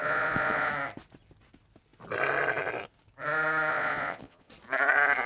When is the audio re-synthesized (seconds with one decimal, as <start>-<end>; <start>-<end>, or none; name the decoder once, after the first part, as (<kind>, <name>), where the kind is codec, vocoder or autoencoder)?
0.0-0.7 (vocoder, Vocos); 3.7-4.5